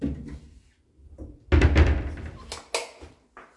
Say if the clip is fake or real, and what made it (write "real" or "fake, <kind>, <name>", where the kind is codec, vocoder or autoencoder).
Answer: real